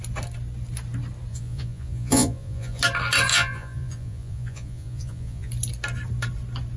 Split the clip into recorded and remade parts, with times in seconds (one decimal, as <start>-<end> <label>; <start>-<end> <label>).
0.0-1.3 recorded; 1.3-2.8 remade; 2.8-3.3 recorded; 3.3-5.5 remade; 5.5-6.8 recorded